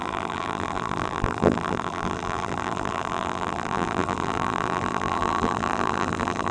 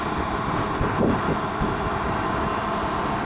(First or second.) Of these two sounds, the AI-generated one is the first